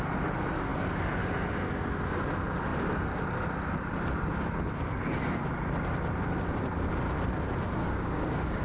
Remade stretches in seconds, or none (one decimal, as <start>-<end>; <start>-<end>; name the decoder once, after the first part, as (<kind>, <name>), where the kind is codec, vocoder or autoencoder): 7.8-8.6 (codec, DAC)